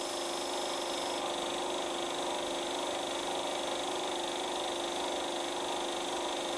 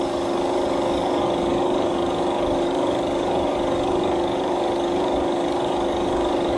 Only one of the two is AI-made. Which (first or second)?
second